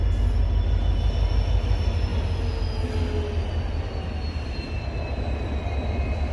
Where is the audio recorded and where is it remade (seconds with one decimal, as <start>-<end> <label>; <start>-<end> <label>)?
0.0-6.3 recorded